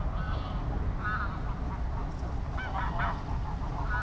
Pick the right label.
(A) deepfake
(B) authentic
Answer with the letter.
B